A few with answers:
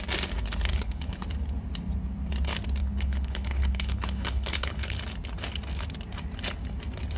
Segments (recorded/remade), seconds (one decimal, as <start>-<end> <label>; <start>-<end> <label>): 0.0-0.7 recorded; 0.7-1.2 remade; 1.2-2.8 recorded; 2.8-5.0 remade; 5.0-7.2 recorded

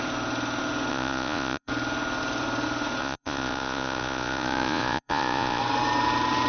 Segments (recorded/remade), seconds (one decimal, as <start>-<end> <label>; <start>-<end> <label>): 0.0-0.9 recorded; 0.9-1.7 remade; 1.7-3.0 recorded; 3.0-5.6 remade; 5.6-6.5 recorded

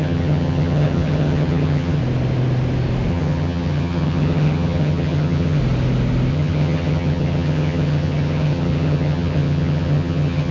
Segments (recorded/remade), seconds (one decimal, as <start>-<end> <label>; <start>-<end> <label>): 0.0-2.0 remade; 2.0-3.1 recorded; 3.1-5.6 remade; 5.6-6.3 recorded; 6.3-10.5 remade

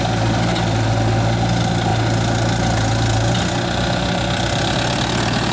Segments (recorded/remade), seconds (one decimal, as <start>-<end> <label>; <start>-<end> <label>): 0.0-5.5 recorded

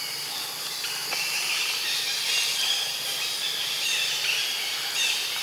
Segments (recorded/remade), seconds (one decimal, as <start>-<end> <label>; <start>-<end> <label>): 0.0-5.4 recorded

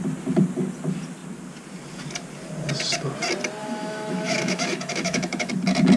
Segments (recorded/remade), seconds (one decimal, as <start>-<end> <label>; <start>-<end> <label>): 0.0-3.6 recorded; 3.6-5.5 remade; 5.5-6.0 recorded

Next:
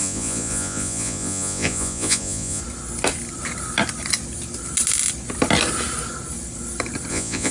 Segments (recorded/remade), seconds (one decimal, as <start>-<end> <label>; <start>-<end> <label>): 0.0-2.6 remade; 2.6-7.1 recorded; 7.1-7.5 remade